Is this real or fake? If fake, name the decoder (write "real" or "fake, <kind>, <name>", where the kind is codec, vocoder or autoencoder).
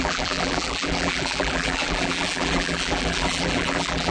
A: fake, vocoder, BigVGAN v2